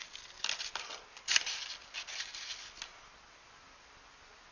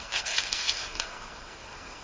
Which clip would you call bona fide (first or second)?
first